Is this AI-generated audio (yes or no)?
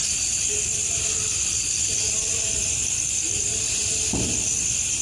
no